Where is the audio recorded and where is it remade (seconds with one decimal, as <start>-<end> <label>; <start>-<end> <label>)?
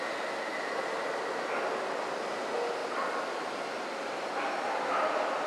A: 0.0-5.5 recorded